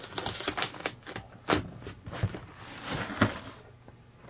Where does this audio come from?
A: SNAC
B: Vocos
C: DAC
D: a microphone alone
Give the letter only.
D